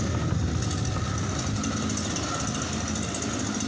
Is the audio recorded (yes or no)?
yes